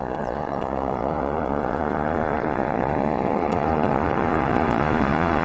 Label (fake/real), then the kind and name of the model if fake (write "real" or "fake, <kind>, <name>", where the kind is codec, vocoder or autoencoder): fake, vocoder, Vocos